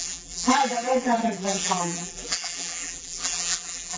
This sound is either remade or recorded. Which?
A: remade